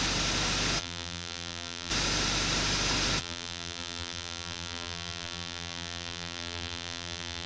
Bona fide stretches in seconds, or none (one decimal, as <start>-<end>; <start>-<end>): 0.0-0.8; 1.9-3.2